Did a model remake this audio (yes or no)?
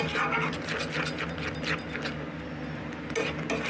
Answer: no